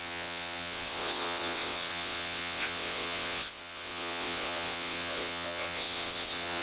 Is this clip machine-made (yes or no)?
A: yes